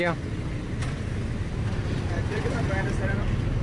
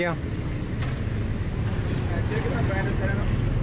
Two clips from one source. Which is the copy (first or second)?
first